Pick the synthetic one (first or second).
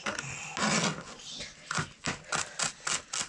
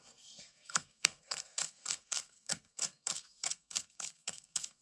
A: second